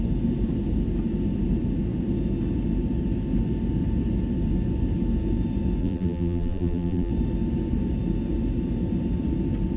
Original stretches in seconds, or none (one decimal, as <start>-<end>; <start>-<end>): 0.0-5.8; 7.1-9.8

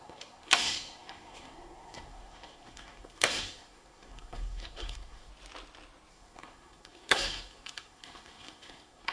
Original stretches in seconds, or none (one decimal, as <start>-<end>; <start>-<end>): 5.3-6.1

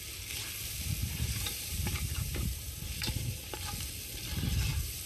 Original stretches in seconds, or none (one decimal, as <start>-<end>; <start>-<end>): 0.0-1.0; 3.6-5.1

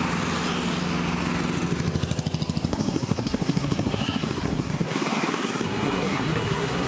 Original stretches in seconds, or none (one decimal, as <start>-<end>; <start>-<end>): 0.0-2.7